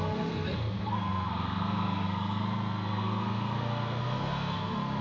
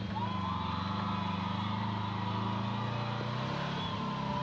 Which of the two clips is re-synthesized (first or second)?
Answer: first